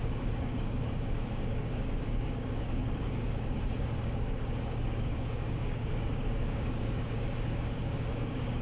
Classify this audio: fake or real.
fake